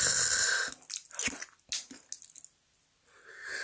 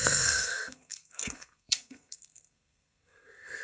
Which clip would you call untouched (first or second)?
first